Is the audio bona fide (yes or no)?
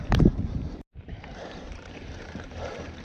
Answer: no